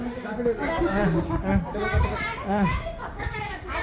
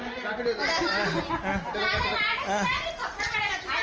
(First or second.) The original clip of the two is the second